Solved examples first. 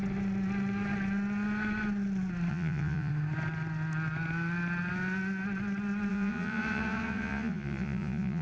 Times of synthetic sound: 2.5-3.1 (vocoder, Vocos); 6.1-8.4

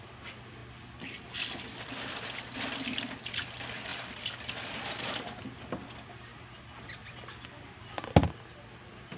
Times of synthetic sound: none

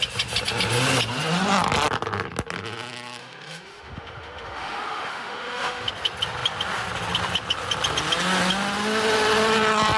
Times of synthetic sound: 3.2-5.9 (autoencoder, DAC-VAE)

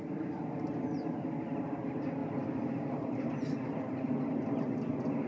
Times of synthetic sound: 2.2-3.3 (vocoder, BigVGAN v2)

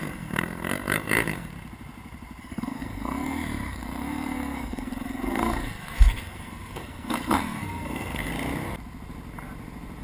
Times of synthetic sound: 0.0-1.5 (codec, SNAC); 2.4-8.3

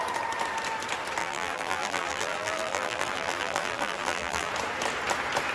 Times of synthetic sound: 1.2-4.5 (vocoder, BigVGAN v2)

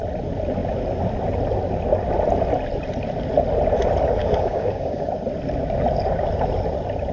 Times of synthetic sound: 4.2-5.1 (codec, DAC)

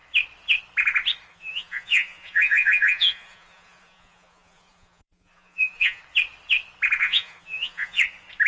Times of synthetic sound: 1.3-6.0 (vocoder, Vocos); 7.0-8.0